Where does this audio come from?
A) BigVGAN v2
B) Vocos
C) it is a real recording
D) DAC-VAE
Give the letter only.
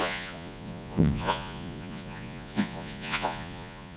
B